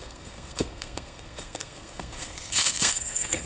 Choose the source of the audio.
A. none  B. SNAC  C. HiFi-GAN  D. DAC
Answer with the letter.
B